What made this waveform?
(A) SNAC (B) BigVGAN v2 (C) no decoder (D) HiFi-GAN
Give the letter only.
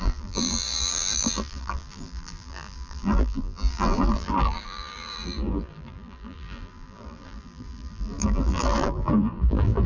B